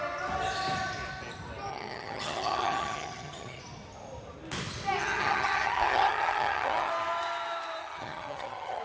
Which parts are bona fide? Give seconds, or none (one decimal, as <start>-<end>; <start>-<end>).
0.0-1.7; 3.6-5.0; 6.9-7.8